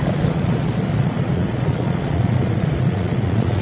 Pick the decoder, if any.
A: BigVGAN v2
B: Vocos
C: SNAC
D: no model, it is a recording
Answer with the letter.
B